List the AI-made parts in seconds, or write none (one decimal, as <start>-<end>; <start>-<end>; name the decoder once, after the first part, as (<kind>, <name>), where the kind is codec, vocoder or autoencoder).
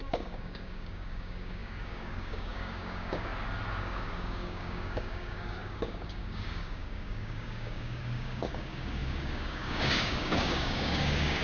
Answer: 0.0-3.3 (codec, DAC); 3.8-11.4